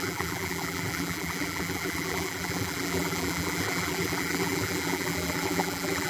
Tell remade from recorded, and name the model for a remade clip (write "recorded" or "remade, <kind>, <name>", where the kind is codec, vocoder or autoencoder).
remade, vocoder, BigVGAN v2